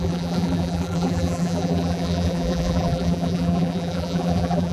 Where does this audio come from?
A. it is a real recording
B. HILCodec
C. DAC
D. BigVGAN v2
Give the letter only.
D